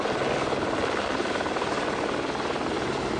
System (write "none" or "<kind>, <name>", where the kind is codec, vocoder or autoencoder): none